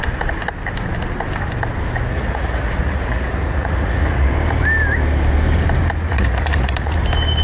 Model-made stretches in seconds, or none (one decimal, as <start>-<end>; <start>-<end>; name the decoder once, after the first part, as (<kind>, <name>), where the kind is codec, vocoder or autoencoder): 2.1-4.3 (vocoder, Vocos); 6.1-7.0